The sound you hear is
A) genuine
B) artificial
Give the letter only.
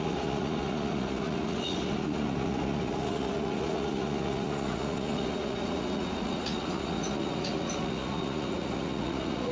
B